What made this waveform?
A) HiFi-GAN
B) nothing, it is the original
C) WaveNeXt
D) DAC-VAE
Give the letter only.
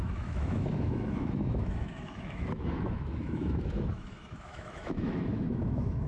D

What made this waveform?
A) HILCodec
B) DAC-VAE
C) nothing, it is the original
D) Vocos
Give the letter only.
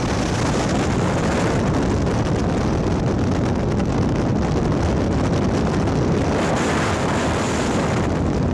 C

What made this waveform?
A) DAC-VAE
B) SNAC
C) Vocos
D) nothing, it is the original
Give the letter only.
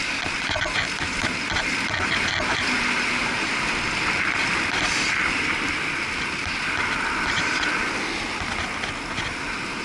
D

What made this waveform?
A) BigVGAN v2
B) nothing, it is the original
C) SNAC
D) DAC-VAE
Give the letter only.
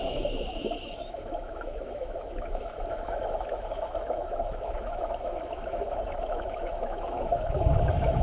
D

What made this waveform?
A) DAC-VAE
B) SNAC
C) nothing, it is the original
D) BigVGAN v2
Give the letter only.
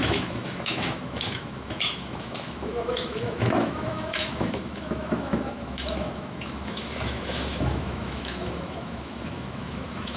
A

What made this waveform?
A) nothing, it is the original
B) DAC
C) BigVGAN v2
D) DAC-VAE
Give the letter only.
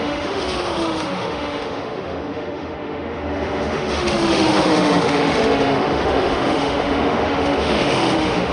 D